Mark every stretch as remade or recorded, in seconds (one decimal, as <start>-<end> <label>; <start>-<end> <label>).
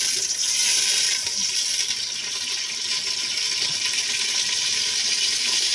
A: 0.0-5.7 recorded